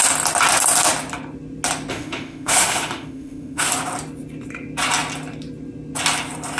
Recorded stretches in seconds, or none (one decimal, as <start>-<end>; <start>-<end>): 0.0-1.9; 3.7-6.6